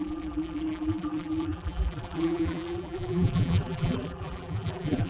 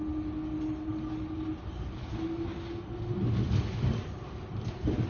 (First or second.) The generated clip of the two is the first